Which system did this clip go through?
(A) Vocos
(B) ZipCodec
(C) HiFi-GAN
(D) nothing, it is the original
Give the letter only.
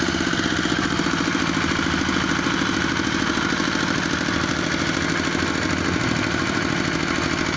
D